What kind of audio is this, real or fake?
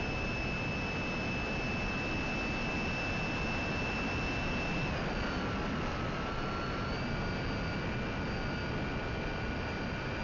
real